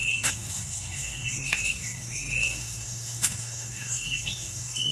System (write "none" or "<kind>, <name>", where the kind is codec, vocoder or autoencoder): codec, SNAC